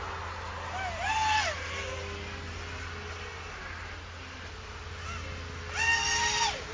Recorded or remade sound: recorded